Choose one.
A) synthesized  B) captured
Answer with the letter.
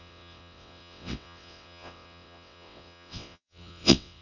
A